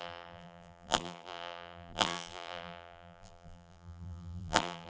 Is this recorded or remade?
remade